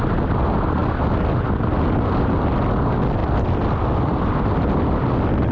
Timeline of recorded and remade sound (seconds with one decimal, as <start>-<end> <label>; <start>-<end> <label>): 0.0-5.5 recorded